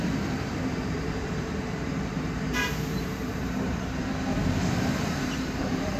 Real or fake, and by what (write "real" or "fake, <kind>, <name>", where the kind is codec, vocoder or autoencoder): fake, vocoder, BigVGAN v2